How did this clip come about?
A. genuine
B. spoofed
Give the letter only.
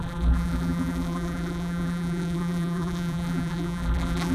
B